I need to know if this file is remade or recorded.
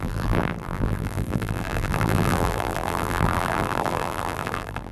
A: remade